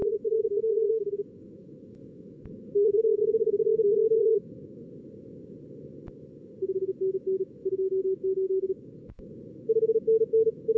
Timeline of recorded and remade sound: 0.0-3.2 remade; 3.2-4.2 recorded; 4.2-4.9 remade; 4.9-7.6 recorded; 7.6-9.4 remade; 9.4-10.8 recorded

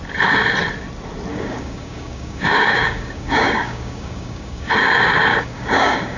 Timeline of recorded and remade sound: 0.0-1.3 recorded; 1.3-4.7 remade; 4.7-5.3 recorded; 5.3-6.2 remade

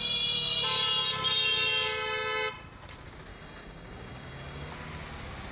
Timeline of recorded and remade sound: 0.0-3.3 recorded; 3.3-4.7 remade; 4.7-5.5 recorded